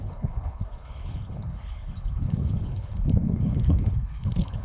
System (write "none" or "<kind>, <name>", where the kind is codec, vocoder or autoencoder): codec, HILCodec